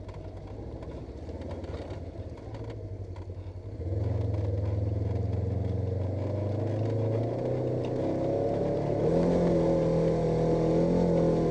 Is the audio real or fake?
real